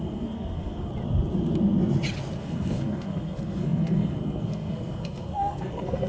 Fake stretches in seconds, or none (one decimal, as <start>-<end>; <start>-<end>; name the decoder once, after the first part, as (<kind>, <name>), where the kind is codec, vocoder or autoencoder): 0.0-0.9 (codec, SNAC); 2.4-6.1